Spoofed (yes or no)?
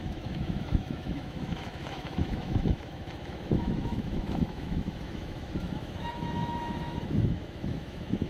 yes